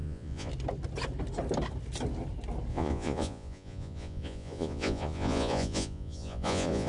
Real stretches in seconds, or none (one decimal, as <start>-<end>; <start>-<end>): 0.5-2.7